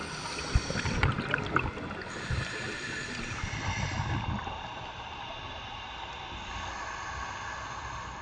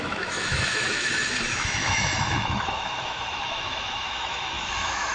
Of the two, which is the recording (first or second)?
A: first